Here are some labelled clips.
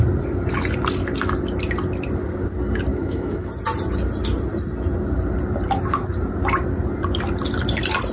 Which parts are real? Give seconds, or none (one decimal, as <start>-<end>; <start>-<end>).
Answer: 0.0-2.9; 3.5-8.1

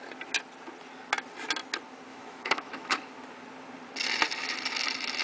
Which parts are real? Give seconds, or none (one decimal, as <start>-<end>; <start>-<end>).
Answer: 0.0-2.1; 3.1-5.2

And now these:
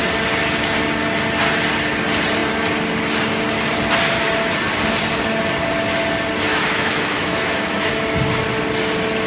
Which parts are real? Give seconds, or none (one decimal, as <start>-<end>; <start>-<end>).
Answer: 0.0-6.5; 7.9-9.3